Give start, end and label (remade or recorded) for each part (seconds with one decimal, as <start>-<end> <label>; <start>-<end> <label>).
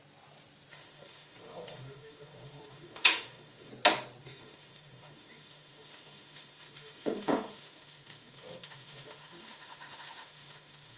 0.0-0.7 recorded; 0.7-3.7 remade; 3.7-4.2 recorded; 4.2-11.0 remade